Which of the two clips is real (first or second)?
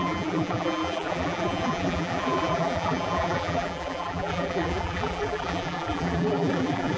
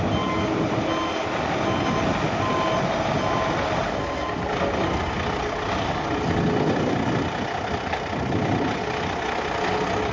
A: second